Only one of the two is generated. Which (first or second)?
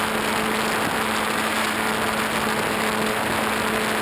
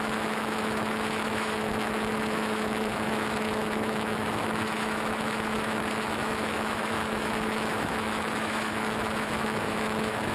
second